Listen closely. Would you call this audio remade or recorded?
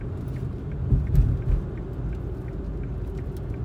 recorded